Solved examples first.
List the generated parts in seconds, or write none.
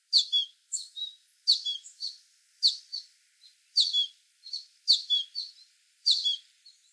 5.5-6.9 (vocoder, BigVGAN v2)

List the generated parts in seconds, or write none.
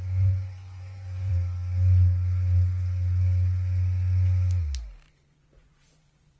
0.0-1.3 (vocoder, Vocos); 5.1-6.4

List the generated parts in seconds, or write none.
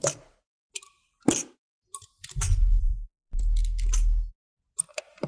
2.8-3.4 (vocoder, BigVGAN v2)